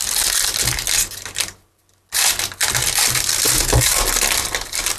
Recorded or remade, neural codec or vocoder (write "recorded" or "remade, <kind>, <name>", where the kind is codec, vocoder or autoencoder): recorded